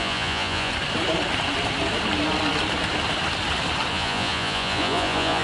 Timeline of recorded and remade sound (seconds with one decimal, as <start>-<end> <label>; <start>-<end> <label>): 0.0-0.7 remade; 0.7-3.9 recorded; 3.9-5.4 remade